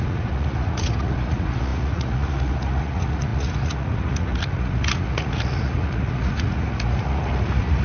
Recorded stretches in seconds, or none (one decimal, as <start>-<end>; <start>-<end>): none

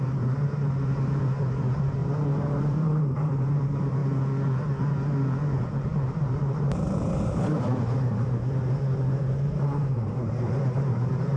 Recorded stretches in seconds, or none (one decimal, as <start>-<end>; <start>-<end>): 4.0-6.4

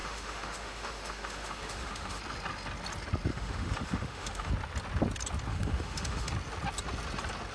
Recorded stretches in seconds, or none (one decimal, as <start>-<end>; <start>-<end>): 2.2-3.3; 4.5-5.5; 6.3-7.5

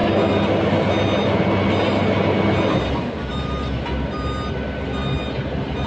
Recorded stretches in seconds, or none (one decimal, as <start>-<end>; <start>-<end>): 0.0-5.9